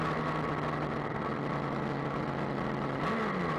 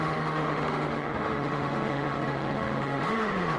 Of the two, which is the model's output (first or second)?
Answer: second